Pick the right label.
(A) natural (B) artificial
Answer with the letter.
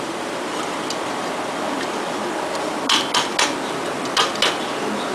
A